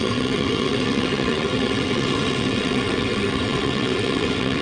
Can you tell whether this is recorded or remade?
remade